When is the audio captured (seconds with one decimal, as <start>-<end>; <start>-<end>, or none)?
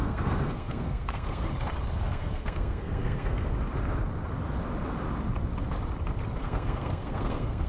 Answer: 1.5-2.0; 3.5-6.4